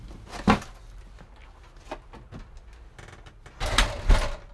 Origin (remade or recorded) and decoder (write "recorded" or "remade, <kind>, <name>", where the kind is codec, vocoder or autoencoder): recorded